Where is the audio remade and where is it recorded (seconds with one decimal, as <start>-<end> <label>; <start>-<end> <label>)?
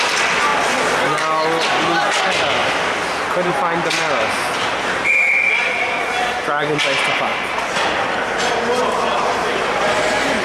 0.0-2.6 recorded; 2.6-3.5 remade; 3.5-10.4 recorded